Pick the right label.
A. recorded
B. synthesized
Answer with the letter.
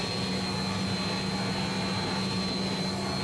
A